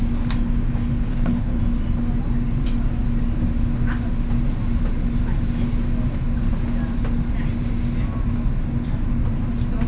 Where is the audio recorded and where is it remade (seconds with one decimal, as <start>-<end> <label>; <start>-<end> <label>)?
0.0-1.1 recorded; 1.1-1.6 remade; 1.6-9.9 recorded